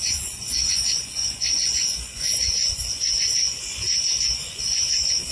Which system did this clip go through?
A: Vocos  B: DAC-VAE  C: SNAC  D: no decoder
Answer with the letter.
A